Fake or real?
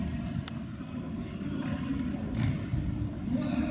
real